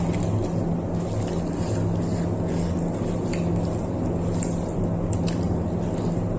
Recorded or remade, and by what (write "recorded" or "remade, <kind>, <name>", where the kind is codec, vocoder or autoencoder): recorded